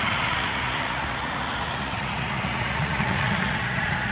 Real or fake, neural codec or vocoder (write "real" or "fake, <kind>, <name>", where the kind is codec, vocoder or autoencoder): fake, vocoder, Vocos